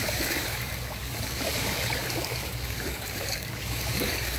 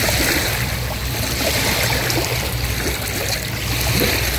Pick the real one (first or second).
second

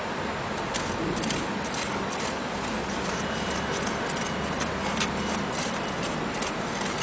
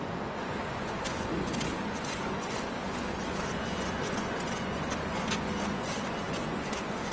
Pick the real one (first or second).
first